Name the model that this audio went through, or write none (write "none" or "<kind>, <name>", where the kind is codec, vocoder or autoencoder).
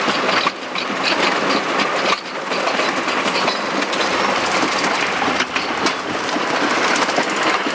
none